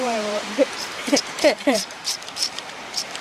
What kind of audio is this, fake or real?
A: fake